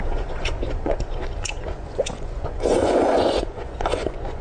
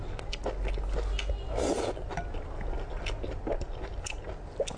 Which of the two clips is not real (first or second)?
first